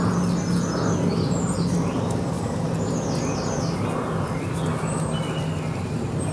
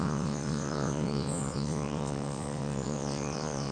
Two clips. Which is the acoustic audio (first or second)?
first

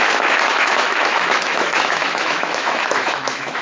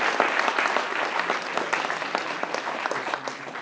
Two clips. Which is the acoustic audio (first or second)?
second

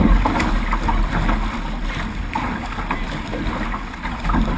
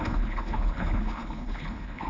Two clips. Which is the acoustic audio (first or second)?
first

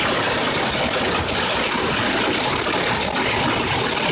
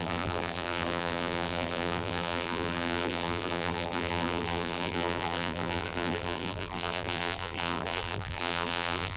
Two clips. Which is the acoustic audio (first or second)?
first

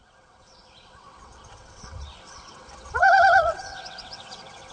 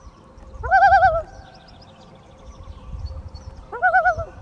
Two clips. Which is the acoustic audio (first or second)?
second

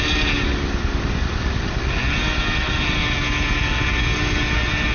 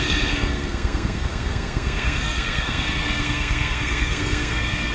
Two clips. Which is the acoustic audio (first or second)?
first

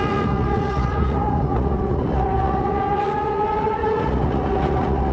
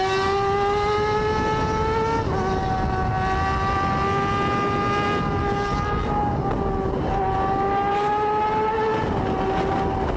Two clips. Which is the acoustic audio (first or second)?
second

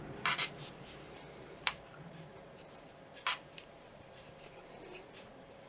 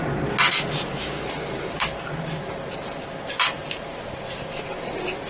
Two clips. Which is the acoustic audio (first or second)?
second